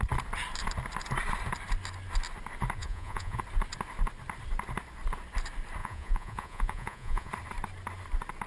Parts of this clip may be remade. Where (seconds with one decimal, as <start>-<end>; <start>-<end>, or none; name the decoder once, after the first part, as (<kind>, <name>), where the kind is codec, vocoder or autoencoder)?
2.8-3.4 (vocoder, Vocos); 5.8-7.3